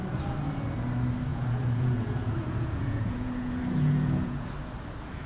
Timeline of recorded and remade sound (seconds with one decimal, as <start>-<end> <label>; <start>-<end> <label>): 0.0-1.3 recorded; 1.3-4.5 remade; 4.5-5.3 recorded